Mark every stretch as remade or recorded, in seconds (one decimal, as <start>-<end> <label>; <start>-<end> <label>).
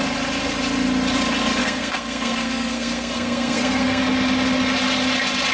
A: 0.0-1.6 recorded; 1.6-4.0 remade; 4.0-5.5 recorded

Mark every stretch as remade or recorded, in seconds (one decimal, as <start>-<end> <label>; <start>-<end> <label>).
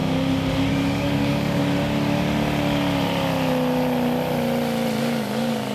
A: 0.0-0.7 recorded; 0.7-1.6 remade; 1.6-5.0 recorded; 5.0-5.7 remade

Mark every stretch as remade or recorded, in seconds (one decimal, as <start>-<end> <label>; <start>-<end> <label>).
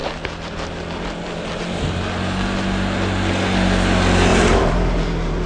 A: 0.0-4.3 recorded; 4.3-5.5 remade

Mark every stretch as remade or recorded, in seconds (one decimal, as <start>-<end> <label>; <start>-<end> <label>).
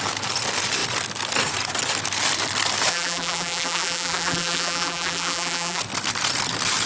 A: 0.0-2.9 recorded; 2.9-5.8 remade; 5.8-6.9 recorded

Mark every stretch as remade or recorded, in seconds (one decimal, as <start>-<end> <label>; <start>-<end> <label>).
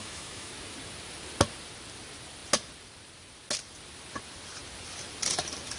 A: 0.0-0.5 remade; 0.5-5.8 recorded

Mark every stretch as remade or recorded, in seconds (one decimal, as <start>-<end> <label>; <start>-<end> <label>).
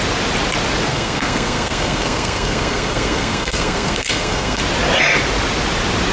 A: 0.0-0.9 recorded; 0.9-4.6 remade; 4.6-6.1 recorded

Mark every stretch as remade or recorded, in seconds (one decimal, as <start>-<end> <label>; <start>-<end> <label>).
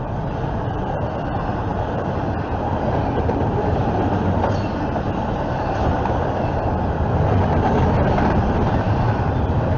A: 0.0-9.8 recorded